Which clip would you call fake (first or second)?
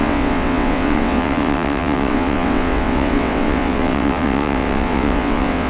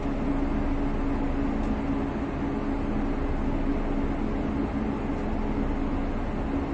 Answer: first